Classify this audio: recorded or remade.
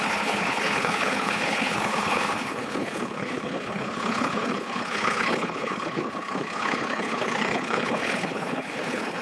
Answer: remade